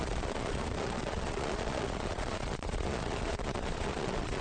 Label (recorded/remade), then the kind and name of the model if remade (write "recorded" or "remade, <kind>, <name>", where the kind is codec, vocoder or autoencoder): remade, vocoder, Vocos